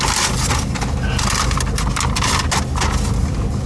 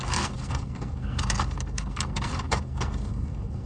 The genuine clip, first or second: first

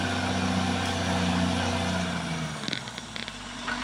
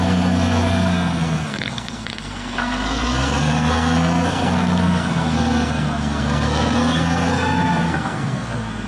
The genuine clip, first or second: first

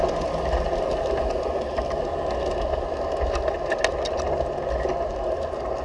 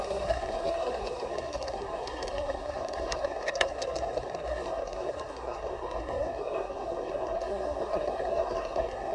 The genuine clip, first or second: first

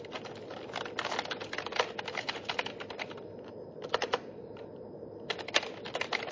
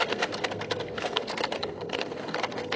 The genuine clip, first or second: first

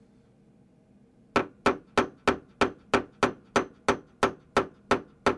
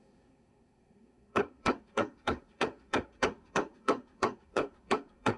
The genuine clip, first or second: first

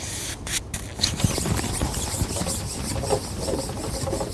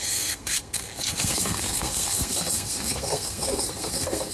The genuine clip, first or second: first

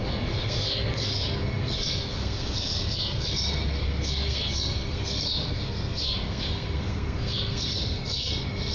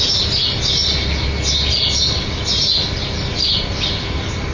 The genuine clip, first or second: second